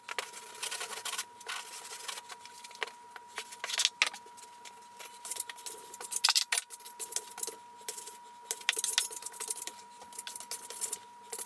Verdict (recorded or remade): recorded